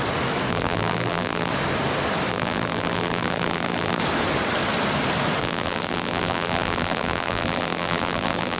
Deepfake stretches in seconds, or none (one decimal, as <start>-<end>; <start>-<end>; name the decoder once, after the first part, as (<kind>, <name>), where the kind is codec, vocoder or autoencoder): 0.5-1.5 (vocoder, BigVGAN v2); 2.3-4.0; 5.4-8.6